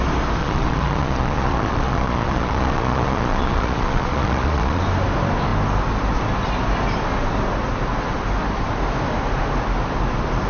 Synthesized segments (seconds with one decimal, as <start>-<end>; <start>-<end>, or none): 0.4-4.8